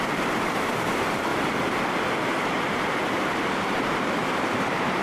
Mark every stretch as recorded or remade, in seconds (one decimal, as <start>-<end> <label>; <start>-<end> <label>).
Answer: 0.0-1.3 remade; 1.3-3.1 recorded; 3.1-5.0 remade